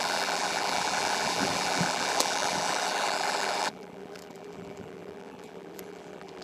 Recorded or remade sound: remade